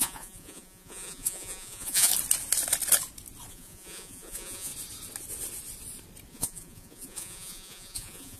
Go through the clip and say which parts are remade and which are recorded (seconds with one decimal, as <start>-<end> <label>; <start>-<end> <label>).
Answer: 0.0-2.1 remade; 2.1-3.5 recorded; 3.5-4.7 remade; 4.7-6.3 recorded; 6.3-8.4 remade